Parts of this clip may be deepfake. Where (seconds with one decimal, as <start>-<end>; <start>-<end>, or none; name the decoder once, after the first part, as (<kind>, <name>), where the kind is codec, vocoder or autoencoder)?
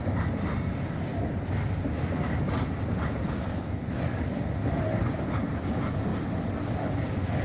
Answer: none